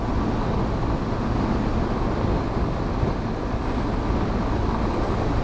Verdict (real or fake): real